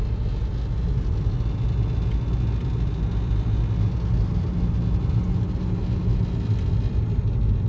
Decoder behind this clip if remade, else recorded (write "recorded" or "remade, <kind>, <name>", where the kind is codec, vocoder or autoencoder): recorded